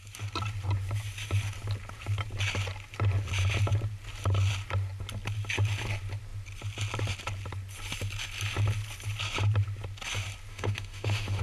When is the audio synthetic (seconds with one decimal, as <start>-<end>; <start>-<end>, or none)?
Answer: 10.5-11.4